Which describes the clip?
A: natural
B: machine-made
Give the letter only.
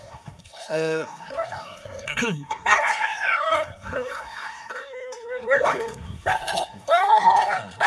B